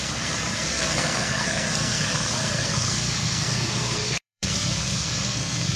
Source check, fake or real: fake